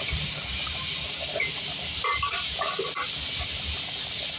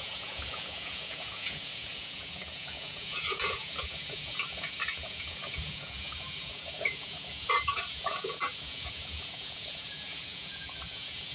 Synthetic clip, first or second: second